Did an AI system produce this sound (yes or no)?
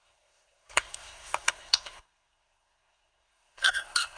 yes